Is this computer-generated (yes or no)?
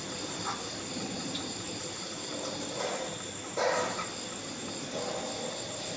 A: no